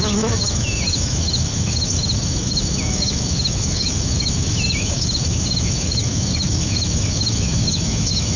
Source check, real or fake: fake